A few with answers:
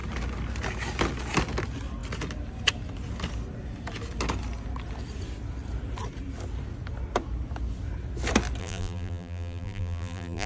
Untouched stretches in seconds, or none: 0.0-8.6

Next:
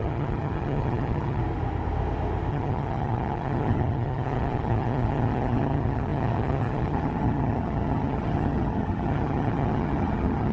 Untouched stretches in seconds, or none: 1.4-2.5

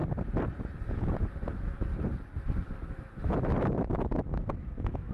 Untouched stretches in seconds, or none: 0.0-0.9; 1.9-2.4

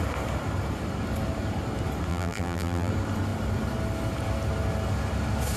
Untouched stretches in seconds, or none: 0.0-2.1; 2.9-5.6

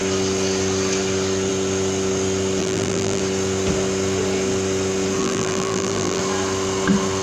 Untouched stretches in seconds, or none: 0.0-2.6; 3.2-5.2; 6.2-7.2